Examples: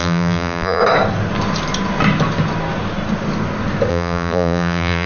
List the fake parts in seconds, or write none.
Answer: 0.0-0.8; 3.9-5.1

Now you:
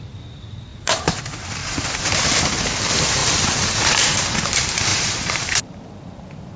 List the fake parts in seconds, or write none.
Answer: 0.7-1.2; 1.6-2.4; 3.2-4.5; 4.9-6.0

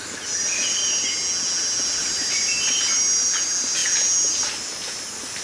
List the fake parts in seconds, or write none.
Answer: none

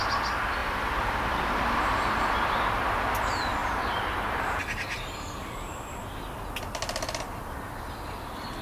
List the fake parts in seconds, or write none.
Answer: 0.6-2.6; 3.6-5.4

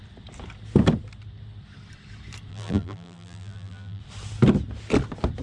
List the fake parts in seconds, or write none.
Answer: 2.5-4.0